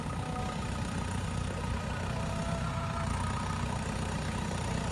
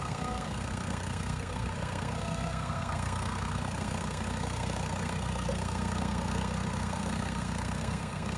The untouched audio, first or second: first